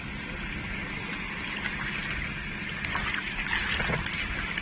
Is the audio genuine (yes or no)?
yes